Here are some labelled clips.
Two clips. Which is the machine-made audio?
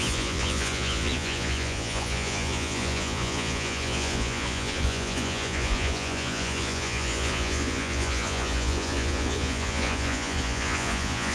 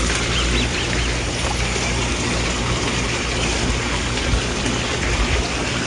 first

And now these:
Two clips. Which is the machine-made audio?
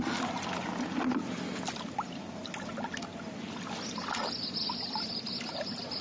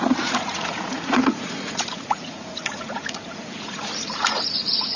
second